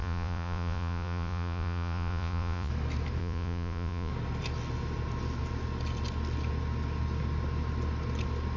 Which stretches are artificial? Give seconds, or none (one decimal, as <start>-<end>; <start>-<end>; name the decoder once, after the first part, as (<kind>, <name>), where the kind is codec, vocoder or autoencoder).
0.0-2.7 (vocoder, Vocos); 3.2-4.1